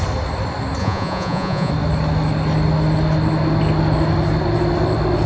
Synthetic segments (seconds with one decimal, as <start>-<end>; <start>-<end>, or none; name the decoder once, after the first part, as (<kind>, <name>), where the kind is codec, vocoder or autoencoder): 0.8-1.7 (vocoder, Vocos)